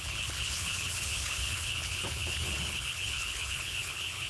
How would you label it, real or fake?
fake